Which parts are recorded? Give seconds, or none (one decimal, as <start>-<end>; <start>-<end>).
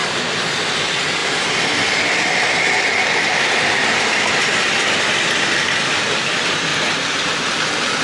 6.7-7.6